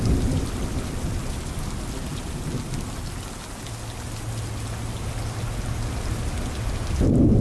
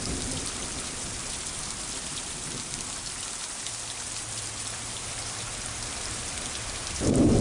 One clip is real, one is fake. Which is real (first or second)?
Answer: first